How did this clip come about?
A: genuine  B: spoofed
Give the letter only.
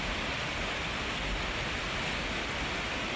A